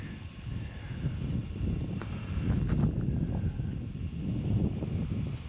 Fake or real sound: real